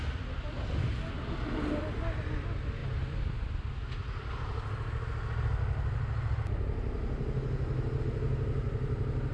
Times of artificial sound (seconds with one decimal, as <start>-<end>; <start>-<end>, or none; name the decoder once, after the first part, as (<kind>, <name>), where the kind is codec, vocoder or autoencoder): none